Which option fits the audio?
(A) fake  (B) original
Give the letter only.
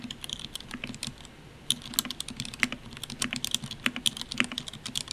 B